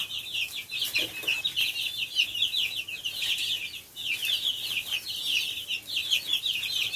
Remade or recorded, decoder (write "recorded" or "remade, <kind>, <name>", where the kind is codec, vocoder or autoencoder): recorded